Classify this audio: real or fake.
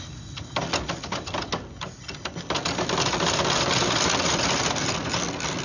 real